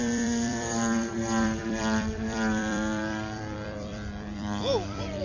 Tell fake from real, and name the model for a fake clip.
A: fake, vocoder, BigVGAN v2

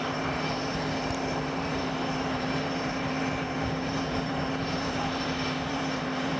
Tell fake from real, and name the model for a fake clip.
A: fake, vocoder, BigVGAN v2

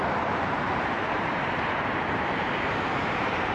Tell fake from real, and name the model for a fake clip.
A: fake, vocoder, BigVGAN v2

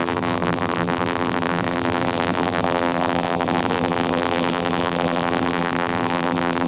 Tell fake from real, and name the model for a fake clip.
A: fake, vocoder, BigVGAN v2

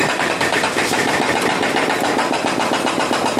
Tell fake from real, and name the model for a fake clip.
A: fake, vocoder, BigVGAN v2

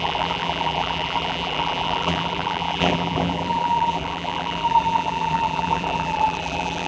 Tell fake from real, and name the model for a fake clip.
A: fake, vocoder, BigVGAN v2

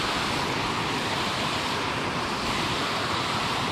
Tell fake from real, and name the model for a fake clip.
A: real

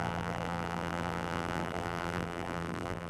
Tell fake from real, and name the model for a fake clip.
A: fake, vocoder, BigVGAN v2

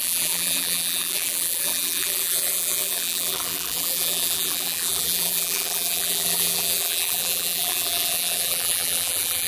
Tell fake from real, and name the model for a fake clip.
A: fake, vocoder, BigVGAN v2